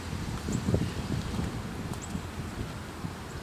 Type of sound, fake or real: fake